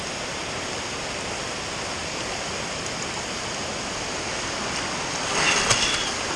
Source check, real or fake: real